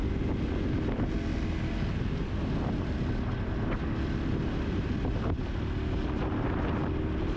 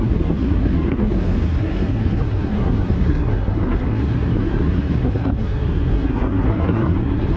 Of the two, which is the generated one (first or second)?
second